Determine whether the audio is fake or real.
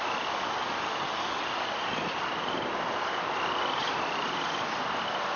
real